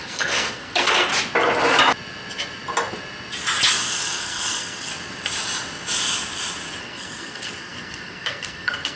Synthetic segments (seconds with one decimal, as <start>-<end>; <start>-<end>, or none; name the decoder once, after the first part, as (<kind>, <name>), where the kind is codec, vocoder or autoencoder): 0.0-1.1 (codec, SNAC); 3.7-4.9; 6.8-9.0